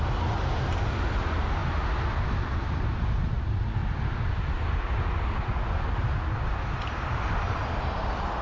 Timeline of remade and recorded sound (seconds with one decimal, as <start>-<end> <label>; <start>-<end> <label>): 0.0-8.4 recorded